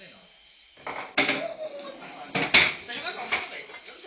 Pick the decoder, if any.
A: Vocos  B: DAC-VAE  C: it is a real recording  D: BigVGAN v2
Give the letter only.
C